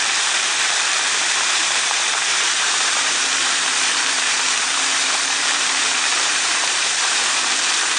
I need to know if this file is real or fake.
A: fake